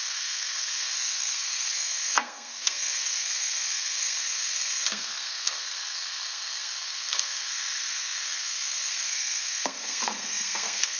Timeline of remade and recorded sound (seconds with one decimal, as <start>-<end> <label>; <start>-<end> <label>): 0.0-11.0 remade